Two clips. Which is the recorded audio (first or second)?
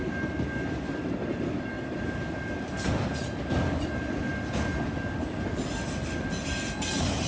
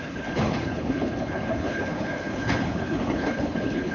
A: first